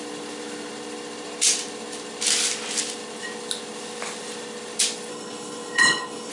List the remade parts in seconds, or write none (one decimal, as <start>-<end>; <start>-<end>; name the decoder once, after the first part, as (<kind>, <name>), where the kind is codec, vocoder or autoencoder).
5.1-6.3 (codec, HILCodec)

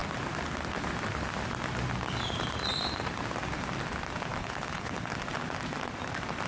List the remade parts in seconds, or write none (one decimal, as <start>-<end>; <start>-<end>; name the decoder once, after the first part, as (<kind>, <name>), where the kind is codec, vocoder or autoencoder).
4.3-5.1 (codec, HILCodec)